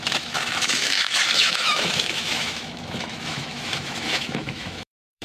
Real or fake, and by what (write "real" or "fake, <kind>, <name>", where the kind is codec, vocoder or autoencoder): fake, autoencoder, DAC-VAE